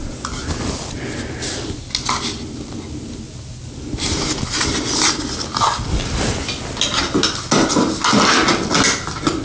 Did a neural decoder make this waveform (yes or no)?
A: no